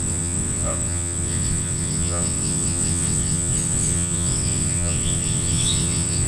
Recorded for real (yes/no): no